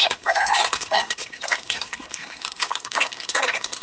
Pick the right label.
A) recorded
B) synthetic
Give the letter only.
B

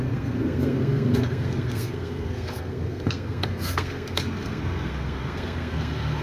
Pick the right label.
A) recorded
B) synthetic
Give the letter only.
B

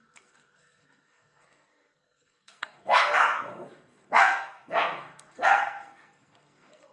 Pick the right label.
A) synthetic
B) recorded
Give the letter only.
A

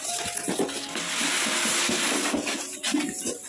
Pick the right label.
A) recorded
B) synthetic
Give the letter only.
A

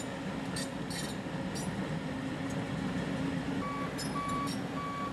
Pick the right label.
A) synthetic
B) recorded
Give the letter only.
B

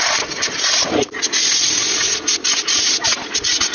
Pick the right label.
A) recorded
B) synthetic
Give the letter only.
A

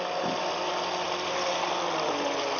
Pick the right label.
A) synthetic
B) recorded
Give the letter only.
B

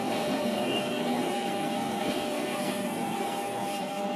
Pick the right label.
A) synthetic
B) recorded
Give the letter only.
A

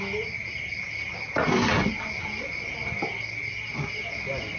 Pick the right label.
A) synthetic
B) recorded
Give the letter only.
B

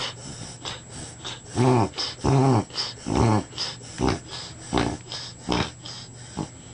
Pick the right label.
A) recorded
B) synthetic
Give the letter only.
A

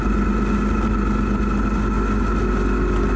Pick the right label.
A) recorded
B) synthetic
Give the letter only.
A